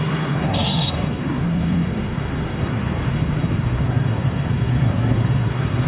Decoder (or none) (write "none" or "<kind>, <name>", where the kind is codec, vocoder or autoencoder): codec, SNAC